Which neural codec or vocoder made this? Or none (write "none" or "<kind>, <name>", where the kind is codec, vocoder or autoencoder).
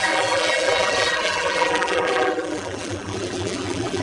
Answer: vocoder, BigVGAN v2